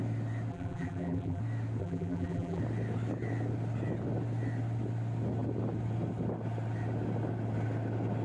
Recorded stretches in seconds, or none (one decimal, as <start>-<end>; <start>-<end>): 0.0-0.5; 1.4-1.8; 2.6-8.2